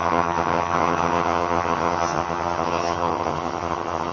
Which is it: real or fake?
fake